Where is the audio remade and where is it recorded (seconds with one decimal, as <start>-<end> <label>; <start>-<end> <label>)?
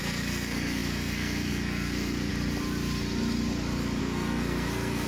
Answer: 0.0-2.3 remade; 2.3-4.0 recorded; 4.0-5.1 remade